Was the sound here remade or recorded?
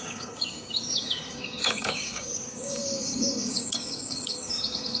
remade